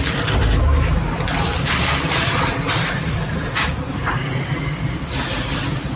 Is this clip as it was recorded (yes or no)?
yes